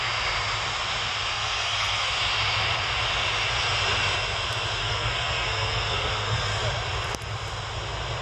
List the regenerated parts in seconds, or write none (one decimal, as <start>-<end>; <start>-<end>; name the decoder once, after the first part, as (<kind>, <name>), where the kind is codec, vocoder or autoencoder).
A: 1.3-2.1 (codec, SNAC); 4.8-6.6